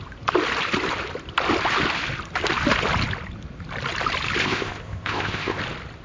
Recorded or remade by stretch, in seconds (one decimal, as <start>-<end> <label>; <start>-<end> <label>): 0.0-4.4 recorded; 4.4-5.6 remade; 5.6-6.0 recorded